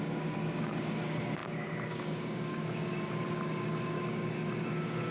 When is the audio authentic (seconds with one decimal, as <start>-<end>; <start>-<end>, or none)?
none